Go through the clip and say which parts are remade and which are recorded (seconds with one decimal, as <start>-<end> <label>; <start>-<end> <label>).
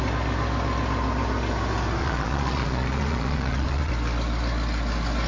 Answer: 0.0-2.0 recorded; 2.0-3.9 remade; 3.9-5.3 recorded